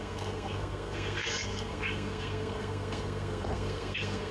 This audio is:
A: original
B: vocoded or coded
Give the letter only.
B